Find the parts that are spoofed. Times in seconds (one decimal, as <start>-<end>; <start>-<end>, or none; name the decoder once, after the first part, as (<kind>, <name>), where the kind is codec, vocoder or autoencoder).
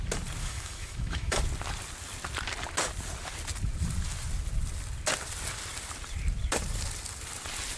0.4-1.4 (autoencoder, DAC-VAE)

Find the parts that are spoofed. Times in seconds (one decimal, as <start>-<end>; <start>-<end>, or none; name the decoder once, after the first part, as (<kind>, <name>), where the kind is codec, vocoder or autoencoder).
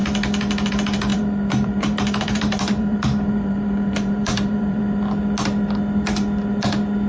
1.1-4.8 (vocoder, BigVGAN v2)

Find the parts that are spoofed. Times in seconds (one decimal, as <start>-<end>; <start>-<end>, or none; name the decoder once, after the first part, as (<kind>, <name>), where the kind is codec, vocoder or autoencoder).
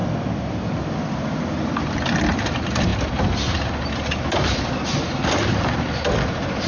none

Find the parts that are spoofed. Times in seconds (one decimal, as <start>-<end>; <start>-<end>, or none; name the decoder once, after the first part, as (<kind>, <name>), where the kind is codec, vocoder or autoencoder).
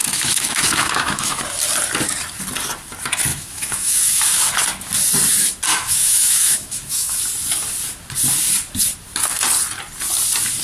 0.0-1.4 (autoencoder, DAC-VAE); 3.3-4.5; 5.7-7.2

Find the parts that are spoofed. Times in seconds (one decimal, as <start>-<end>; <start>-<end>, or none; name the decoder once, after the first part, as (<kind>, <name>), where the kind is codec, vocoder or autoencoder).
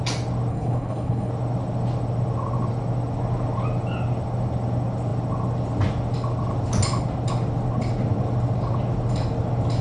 0.5-1.3 (codec, HILCodec)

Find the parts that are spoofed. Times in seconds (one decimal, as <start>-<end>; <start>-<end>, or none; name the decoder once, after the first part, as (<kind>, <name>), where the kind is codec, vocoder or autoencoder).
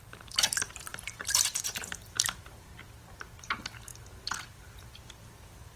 0.0-2.7 (vocoder, BigVGAN v2); 3.4-5.8